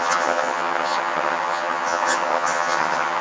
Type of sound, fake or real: fake